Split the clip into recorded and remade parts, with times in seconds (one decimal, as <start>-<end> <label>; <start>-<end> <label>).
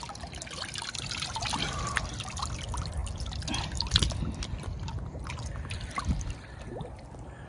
0.0-3.0 remade; 3.0-3.6 recorded; 3.6-7.5 remade